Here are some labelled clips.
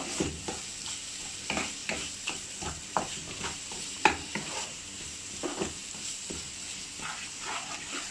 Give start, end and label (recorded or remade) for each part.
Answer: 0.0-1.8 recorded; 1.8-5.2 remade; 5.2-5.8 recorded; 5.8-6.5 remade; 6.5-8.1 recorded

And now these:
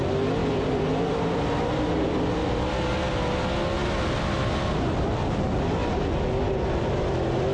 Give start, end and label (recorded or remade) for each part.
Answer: 0.0-0.4 recorded; 0.4-2.3 remade; 2.3-7.5 recorded

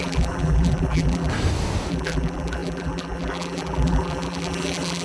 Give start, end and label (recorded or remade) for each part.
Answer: 0.0-1.3 remade; 1.3-1.9 recorded; 1.9-5.0 remade

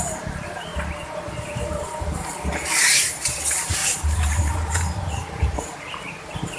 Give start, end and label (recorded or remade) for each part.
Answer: 0.0-0.7 remade; 0.7-1.3 recorded; 1.3-3.8 remade; 3.8-4.4 recorded; 4.4-6.6 remade

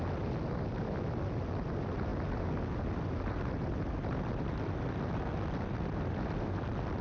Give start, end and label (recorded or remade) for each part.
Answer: 0.0-7.0 recorded

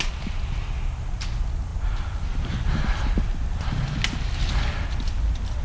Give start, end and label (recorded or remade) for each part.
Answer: 0.0-5.6 recorded

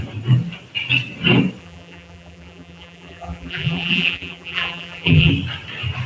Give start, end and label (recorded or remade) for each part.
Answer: 0.0-1.6 recorded; 1.6-5.3 remade; 5.3-6.1 recorded

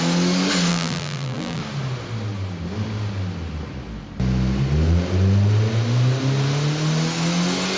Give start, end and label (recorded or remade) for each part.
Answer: 0.0-0.7 recorded; 0.7-1.6 remade; 1.6-7.8 recorded